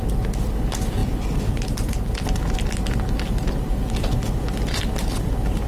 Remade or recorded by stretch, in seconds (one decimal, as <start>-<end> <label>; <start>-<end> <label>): 0.0-5.7 recorded